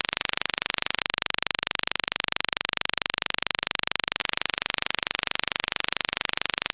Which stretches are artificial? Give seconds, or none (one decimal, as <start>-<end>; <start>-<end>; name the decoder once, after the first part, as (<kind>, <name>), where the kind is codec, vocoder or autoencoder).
1.0-4.2 (vocoder, BigVGAN v2)